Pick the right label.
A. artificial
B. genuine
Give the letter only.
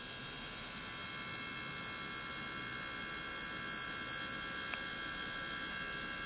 B